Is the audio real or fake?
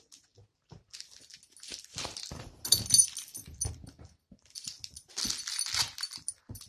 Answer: real